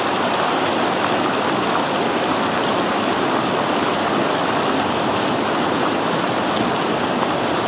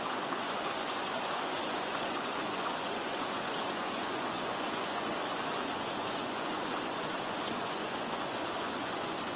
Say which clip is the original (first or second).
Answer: first